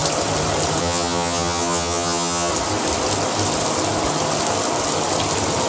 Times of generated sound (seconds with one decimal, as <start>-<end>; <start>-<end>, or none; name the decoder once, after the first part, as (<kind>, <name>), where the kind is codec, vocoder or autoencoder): 0.8-2.5 (vocoder, HiFi-GAN)